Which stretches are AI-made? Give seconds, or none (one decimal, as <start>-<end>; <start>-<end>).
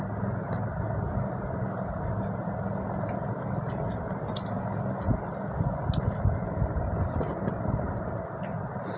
none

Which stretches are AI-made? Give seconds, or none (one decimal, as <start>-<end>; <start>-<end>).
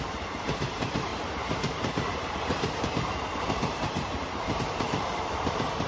0.0-5.9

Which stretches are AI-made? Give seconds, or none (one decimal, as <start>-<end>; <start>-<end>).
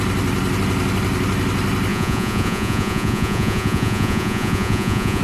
1.9-5.2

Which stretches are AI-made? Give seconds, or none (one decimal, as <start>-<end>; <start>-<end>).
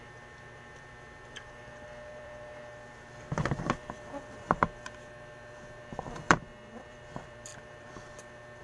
0.0-8.6